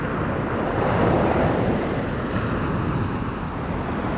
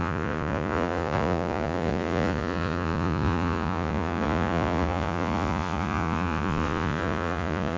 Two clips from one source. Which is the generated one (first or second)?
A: second